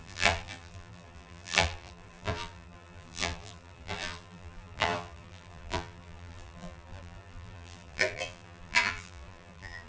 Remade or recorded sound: remade